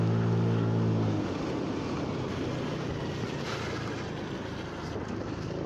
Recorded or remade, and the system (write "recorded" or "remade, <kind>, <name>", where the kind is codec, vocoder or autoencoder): recorded